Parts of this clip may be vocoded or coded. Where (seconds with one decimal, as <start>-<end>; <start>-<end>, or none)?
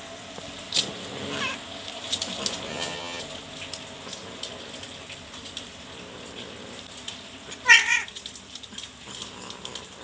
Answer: 2.7-3.2